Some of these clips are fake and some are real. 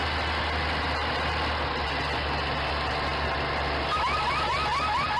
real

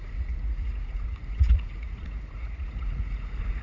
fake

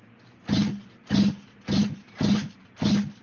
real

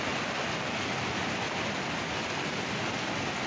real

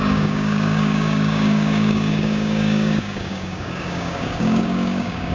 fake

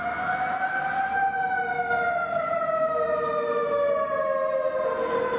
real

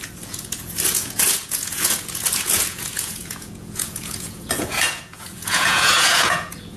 fake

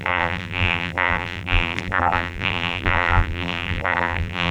fake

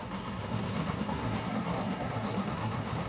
fake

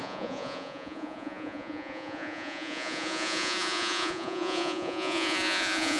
fake